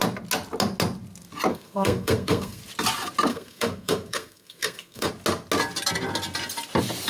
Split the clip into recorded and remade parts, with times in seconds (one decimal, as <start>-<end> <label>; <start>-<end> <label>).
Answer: 0.0-1.5 recorded; 1.5-2.6 remade; 2.6-3.3 recorded; 3.3-5.1 remade; 5.1-7.1 recorded